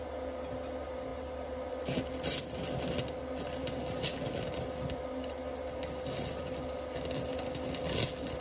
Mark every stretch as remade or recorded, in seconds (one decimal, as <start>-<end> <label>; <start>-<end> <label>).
0.0-8.4 recorded

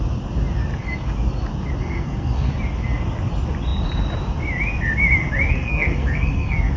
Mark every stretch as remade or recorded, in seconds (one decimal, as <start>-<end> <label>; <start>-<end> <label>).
0.0-1.8 recorded; 1.8-2.5 remade; 2.5-5.5 recorded; 5.5-6.8 remade